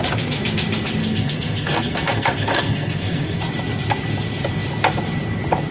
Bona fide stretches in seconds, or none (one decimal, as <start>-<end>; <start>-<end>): 0.0-1.0; 3.4-5.7